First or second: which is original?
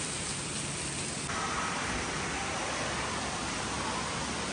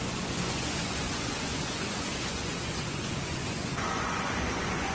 first